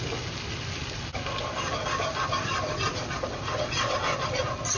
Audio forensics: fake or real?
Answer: real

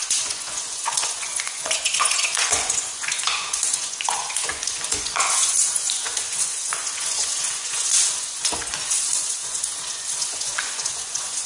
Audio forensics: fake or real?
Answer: fake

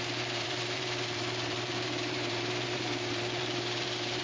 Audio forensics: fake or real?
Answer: fake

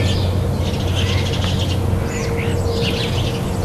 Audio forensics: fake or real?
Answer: real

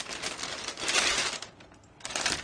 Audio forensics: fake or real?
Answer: real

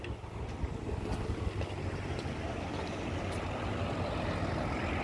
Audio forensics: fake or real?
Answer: real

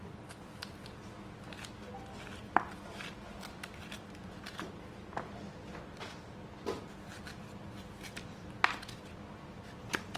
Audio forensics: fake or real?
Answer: real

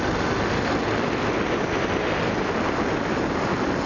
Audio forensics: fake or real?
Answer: real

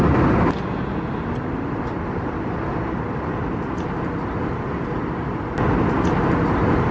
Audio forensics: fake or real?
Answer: real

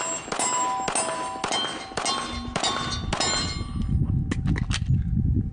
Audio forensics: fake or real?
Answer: real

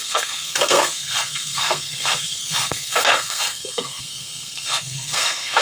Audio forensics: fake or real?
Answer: fake